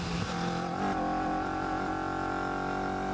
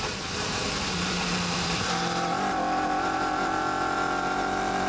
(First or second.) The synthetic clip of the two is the second